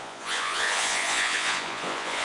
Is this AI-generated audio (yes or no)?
yes